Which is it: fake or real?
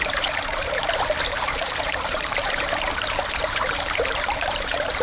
fake